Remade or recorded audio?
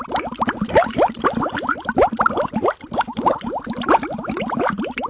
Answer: recorded